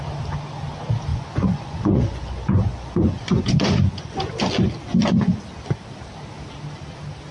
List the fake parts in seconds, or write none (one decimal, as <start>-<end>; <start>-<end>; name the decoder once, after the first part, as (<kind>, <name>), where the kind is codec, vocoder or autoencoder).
1.1-4.3 (vocoder, Vocos)